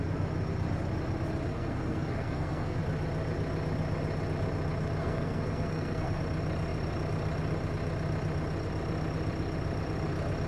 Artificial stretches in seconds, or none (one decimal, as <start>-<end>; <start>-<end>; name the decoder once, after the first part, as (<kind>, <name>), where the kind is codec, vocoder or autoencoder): 1.5-2.8 (codec, SNAC); 5.0-6.2